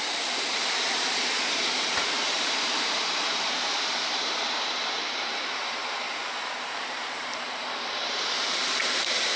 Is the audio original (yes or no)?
no